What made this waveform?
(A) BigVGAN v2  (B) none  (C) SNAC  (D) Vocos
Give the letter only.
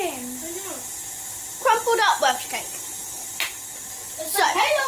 B